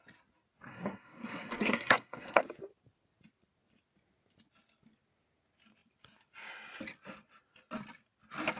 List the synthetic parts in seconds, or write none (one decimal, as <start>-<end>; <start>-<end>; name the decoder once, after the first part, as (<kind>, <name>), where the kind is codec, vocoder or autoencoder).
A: 0.7-2.4 (codec, SNAC)